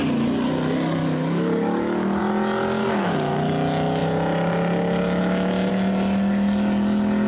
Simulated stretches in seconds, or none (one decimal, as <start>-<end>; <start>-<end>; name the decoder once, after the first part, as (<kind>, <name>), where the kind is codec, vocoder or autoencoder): 1.0-2.2 (codec, DAC); 2.8-3.5